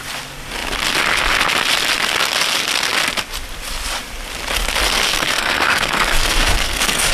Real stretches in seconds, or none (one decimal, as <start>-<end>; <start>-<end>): 0.0-5.1